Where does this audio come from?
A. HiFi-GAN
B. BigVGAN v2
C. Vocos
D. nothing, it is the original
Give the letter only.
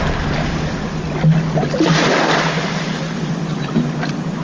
D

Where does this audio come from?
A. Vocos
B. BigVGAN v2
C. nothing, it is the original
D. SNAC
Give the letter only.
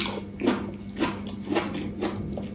C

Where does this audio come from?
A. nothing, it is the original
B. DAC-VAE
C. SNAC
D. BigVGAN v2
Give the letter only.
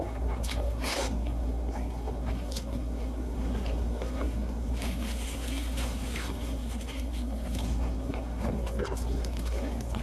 C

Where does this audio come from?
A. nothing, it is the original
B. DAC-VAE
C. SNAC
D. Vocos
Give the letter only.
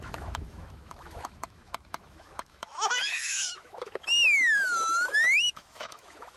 B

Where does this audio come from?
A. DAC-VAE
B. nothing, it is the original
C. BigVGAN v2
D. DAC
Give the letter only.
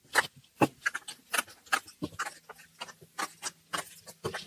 B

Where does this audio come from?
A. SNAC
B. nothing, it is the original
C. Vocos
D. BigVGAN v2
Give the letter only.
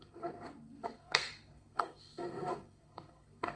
A